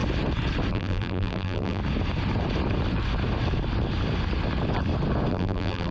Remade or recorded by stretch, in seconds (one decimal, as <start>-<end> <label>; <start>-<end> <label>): 0.0-0.7 recorded; 0.7-1.8 remade; 1.8-5.3 recorded; 5.3-5.9 remade